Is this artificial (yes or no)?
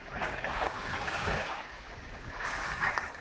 yes